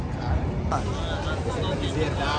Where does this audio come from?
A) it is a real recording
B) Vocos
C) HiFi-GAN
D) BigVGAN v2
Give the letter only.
A